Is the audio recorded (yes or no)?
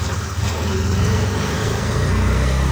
no